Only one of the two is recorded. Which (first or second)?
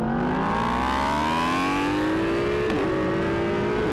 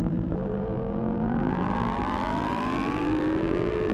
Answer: first